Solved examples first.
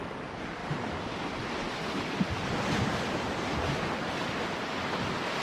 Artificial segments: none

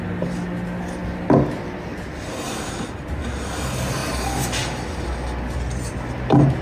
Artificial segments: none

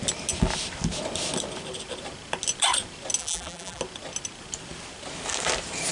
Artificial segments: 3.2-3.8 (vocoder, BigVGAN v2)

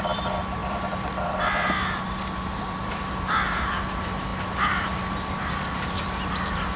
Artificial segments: 0.0-6.8 (vocoder, BigVGAN v2)